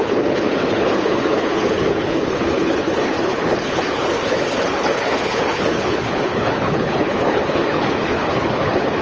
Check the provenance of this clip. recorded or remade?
remade